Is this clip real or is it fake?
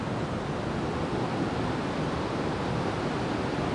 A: real